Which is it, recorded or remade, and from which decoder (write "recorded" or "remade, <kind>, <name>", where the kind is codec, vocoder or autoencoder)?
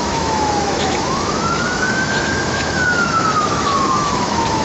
remade, autoencoder, DAC-VAE